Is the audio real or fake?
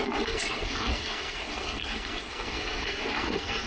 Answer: fake